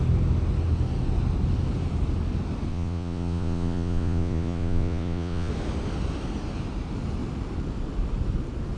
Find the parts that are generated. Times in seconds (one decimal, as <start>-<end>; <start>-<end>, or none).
2.7-5.5